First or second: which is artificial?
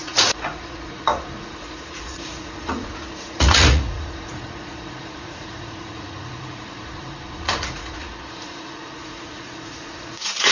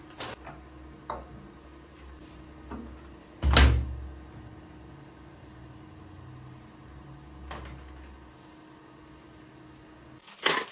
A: first